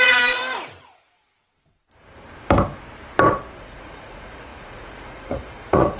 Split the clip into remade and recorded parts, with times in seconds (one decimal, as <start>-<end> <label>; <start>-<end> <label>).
0.0-0.4 remade; 0.4-3.6 recorded; 3.6-6.0 remade